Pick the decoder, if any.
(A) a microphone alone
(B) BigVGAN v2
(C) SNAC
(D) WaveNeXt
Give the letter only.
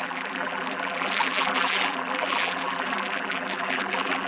B